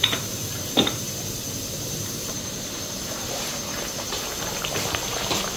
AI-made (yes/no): yes